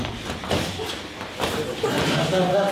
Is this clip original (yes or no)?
no